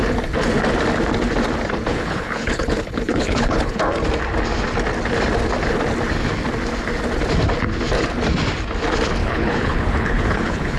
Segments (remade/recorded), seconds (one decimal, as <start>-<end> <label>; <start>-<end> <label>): 0.0-1.9 recorded; 1.9-3.8 remade; 3.8-9.2 recorded; 9.2-10.8 remade